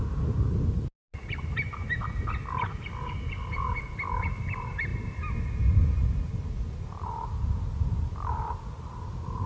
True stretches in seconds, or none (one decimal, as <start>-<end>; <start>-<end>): 0.0-9.5